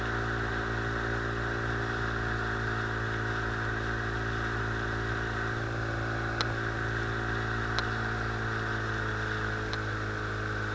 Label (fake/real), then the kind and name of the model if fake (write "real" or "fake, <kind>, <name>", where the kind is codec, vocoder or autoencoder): real